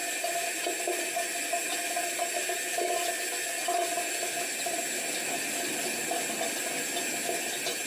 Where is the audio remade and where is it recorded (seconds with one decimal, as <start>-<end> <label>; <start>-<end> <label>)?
0.0-1.1 remade; 1.1-7.9 recorded